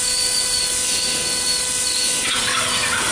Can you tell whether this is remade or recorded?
recorded